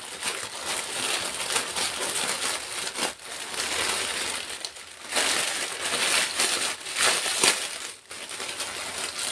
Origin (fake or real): real